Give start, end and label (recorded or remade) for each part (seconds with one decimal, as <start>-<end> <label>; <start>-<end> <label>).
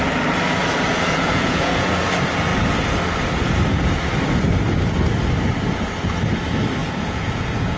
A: 0.0-0.9 recorded; 0.9-2.0 remade; 2.0-6.8 recorded; 6.8-7.8 remade